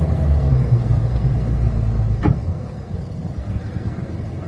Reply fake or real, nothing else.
fake